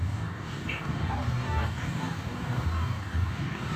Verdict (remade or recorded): remade